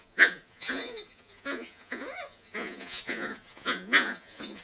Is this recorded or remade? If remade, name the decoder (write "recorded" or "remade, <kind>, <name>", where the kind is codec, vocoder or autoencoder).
remade, vocoder, Vocos